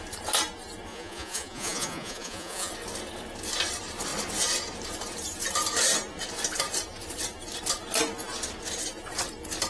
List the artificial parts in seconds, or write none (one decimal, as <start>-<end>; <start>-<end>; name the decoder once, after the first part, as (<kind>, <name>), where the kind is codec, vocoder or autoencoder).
0.9-2.7 (vocoder, Vocos)